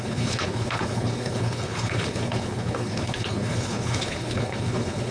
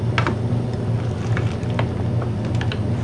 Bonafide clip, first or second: second